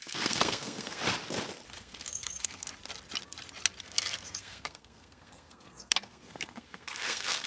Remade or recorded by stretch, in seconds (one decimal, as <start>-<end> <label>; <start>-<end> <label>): 0.0-1.0 remade; 1.0-1.8 recorded; 1.8-2.7 remade; 2.7-3.8 recorded; 3.8-7.5 remade